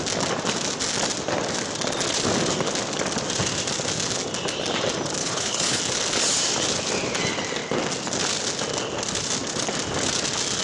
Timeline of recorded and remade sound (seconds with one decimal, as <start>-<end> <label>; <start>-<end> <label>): 0.0-5.2 recorded; 5.2-5.8 remade; 5.8-10.6 recorded

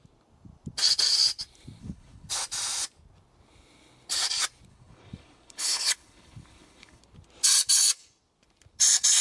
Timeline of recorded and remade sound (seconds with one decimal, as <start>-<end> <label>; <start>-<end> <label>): 0.0-1.8 recorded; 1.8-2.3 remade; 2.3-4.7 recorded; 4.7-7.0 remade; 7.0-9.2 recorded